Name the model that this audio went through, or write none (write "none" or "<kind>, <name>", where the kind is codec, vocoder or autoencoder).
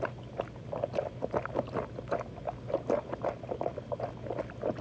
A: none